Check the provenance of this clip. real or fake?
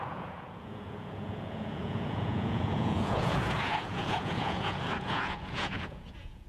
fake